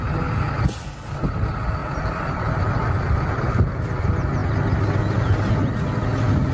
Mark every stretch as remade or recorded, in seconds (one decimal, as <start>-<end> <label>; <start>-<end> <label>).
0.0-1.8 recorded; 1.8-4.0 remade; 4.0-6.5 recorded